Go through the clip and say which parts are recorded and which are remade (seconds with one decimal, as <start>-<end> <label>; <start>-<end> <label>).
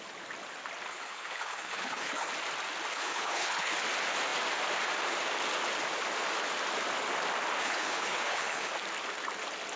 0.0-0.9 recorded; 0.9-2.3 remade; 2.3-2.9 recorded; 2.9-3.7 remade; 3.7-7.6 recorded; 7.6-8.7 remade; 8.7-9.8 recorded